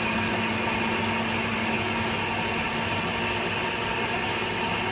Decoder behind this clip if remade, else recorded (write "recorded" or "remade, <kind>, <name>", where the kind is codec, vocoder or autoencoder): recorded